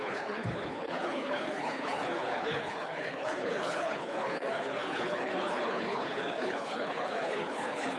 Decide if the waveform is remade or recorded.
remade